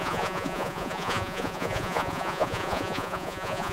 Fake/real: fake